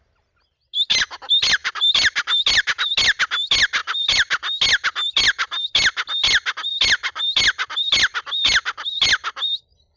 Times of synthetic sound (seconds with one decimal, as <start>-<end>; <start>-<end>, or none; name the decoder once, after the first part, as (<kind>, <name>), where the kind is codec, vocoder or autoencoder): 1.6-2.9 (vocoder, BigVGAN v2); 3.8-4.6